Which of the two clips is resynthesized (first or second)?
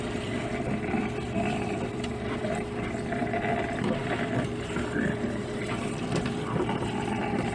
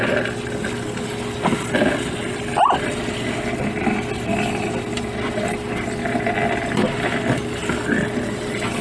first